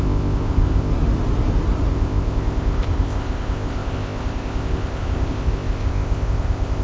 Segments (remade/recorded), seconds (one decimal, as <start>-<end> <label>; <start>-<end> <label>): 0.0-0.9 remade; 0.9-1.9 recorded; 1.9-6.8 remade